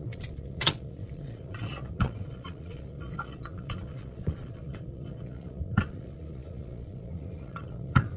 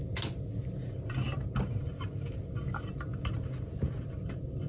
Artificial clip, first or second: first